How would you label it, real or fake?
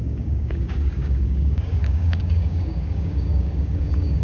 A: fake